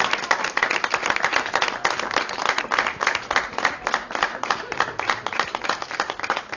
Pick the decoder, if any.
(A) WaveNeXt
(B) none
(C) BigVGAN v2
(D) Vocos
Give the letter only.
B